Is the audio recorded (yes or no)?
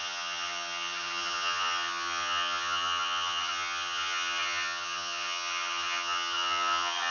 no